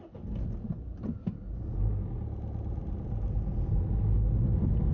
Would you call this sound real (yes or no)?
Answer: yes